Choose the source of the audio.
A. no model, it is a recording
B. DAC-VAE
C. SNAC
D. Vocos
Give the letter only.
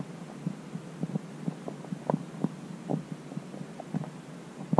A